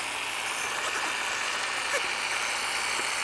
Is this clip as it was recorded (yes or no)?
yes